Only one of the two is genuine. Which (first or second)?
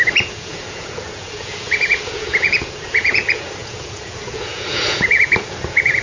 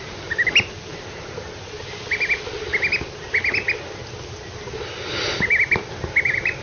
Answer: second